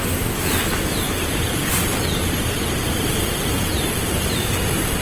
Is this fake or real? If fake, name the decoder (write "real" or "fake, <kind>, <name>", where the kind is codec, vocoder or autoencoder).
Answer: real